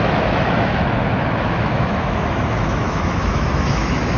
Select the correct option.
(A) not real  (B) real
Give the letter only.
A